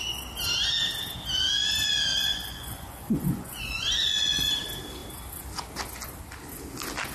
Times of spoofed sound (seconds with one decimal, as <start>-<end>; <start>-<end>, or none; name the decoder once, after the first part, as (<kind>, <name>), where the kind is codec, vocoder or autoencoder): 2.1-4.5 (vocoder, Vocos)